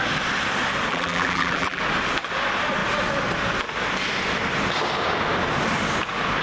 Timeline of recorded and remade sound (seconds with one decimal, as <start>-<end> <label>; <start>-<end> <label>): 0.0-0.9 recorded; 0.9-1.8 remade; 1.8-6.4 recorded

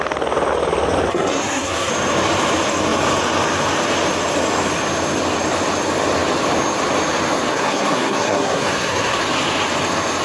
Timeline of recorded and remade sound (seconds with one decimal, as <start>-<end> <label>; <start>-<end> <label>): 0.0-1.1 recorded; 1.1-1.9 remade; 1.9-7.5 recorded; 7.5-9.2 remade; 9.2-10.2 recorded

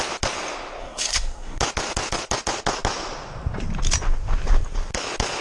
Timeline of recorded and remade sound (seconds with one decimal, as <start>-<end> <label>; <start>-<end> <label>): 0.0-0.8 recorded; 0.8-1.6 remade; 1.6-5.4 recorded

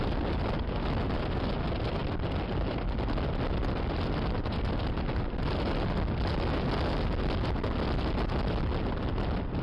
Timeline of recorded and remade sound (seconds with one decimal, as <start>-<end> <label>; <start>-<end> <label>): 0.0-9.6 recorded

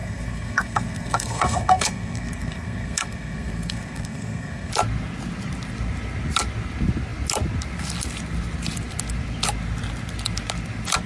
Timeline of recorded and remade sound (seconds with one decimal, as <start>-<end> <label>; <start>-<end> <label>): 0.0-4.7 remade; 4.7-11.1 recorded

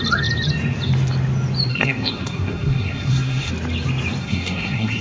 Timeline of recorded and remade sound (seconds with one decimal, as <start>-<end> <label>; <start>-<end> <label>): 0.0-1.7 recorded; 1.7-3.5 remade; 3.5-4.2 recorded; 4.2-5.0 remade